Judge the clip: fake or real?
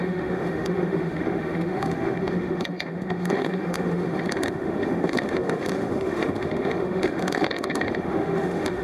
fake